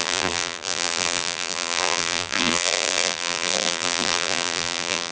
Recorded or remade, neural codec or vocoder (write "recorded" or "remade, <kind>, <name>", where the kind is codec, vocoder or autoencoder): remade, vocoder, BigVGAN v2